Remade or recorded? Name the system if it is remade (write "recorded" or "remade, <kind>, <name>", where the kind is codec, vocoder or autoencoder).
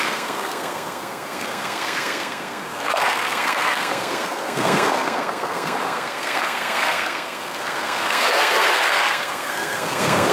remade, codec, SNAC